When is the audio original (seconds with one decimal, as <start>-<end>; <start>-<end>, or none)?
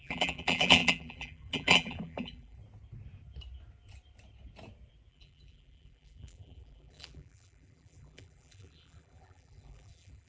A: 2.6-5.1